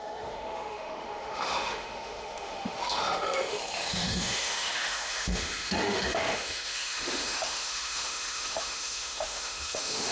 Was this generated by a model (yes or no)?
yes